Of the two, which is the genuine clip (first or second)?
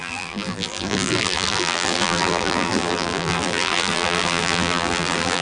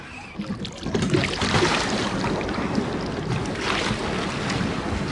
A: second